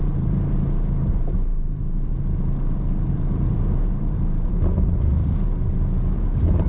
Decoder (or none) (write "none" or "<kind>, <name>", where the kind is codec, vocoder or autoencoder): vocoder, BigVGAN v2